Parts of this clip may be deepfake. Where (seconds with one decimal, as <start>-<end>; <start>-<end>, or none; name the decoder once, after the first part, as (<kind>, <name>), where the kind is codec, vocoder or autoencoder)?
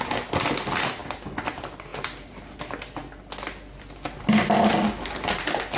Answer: none